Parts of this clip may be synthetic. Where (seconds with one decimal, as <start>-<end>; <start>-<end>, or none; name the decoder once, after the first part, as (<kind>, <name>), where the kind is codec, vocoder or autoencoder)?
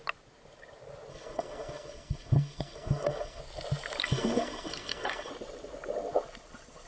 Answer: 1.1-3.4 (codec, SNAC); 4.0-5.3